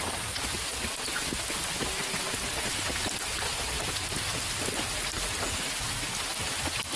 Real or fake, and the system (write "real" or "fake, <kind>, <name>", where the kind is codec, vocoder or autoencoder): real